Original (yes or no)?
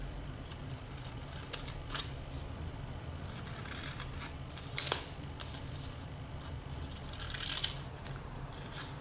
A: no